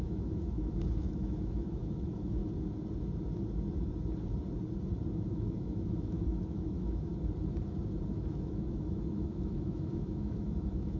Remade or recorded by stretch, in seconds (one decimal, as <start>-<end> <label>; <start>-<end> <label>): 0.0-2.4 remade; 2.4-5.3 recorded; 5.3-7.1 remade; 7.1-8.1 recorded; 8.1-11.0 remade